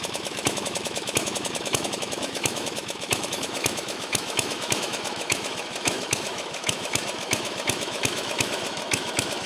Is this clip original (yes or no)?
no